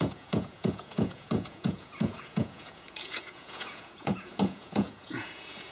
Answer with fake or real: fake